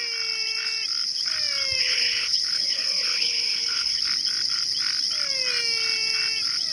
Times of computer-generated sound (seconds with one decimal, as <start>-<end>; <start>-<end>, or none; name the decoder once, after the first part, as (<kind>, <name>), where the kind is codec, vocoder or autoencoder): 1.8-4.0 (codec, HILCodec)